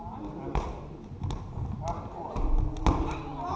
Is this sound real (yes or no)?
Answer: yes